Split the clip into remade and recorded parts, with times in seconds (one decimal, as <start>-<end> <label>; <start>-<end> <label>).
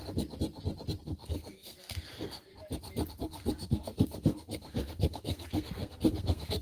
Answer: 0.0-1.0 recorded; 1.0-2.5 remade; 2.5-3.1 recorded; 3.1-6.6 remade